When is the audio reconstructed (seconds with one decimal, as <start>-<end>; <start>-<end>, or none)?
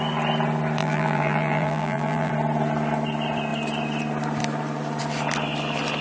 0.8-2.3